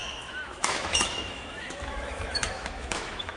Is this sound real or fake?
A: fake